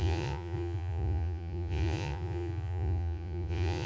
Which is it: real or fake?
fake